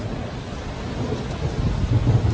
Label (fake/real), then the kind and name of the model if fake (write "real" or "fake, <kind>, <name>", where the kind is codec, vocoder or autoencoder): real